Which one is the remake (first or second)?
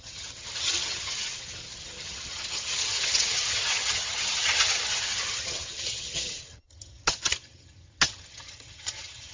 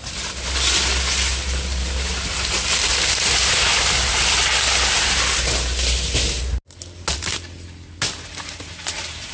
first